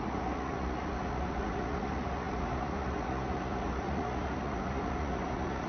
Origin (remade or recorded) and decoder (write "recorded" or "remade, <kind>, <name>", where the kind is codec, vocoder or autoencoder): remade, vocoder, Vocos